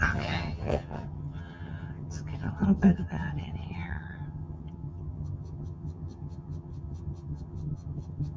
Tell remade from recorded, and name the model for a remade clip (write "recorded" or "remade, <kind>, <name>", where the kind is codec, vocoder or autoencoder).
remade, vocoder, HiFi-GAN